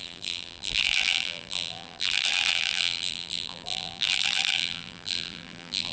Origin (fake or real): fake